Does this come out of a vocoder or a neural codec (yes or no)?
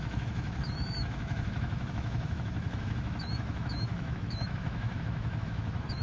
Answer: yes